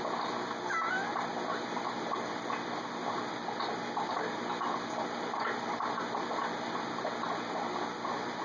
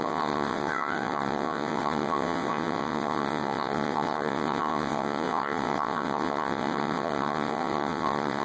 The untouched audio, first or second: first